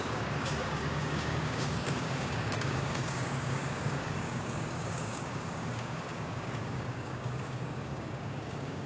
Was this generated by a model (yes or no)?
yes